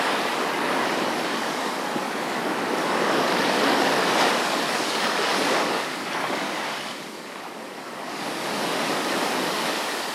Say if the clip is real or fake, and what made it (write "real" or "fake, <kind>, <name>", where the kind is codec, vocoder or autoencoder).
fake, codec, DAC